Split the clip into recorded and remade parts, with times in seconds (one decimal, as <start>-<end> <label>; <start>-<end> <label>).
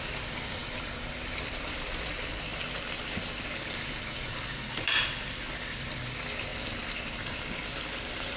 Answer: 0.0-2.5 remade; 2.5-4.2 recorded; 4.2-8.4 remade